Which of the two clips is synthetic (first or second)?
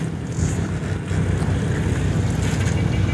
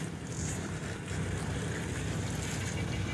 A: second